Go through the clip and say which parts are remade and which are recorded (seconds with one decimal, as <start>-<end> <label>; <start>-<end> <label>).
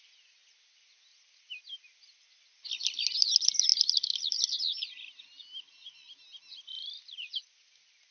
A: 0.0-8.1 recorded